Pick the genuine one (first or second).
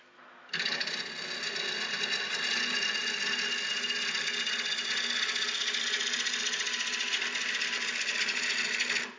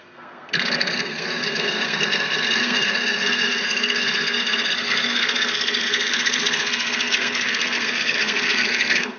first